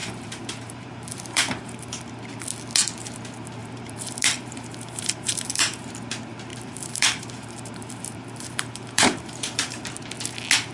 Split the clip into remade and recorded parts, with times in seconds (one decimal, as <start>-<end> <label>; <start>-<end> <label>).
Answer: 0.0-2.0 remade; 2.0-3.6 recorded; 3.6-5.9 remade; 5.9-6.5 recorded; 6.5-9.9 remade; 9.9-10.7 recorded